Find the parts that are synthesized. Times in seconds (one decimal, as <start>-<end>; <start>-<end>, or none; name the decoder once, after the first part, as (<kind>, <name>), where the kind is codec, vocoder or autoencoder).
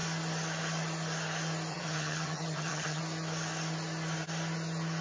1.7-3.0 (vocoder, HiFi-GAN)